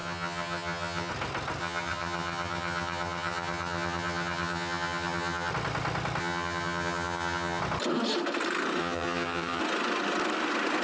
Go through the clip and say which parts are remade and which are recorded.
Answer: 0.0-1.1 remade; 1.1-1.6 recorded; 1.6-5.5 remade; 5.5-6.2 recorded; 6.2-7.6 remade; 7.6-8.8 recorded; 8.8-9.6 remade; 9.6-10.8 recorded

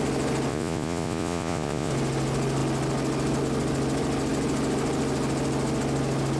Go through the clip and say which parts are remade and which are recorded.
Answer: 0.0-0.5 recorded; 0.5-1.9 remade; 1.9-6.4 recorded

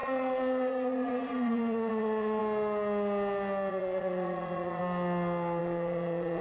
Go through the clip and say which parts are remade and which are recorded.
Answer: 0.0-2.4 remade; 2.4-3.7 recorded; 3.7-4.8 remade; 4.8-5.6 recorded; 5.6-6.4 remade

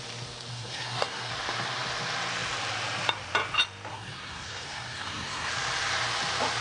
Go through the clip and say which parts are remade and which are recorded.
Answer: 0.0-0.5 recorded; 0.5-1.3 remade; 1.3-3.9 recorded; 3.9-5.5 remade; 5.5-6.6 recorded

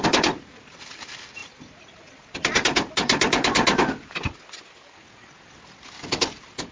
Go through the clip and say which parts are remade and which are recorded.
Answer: 0.0-6.7 recorded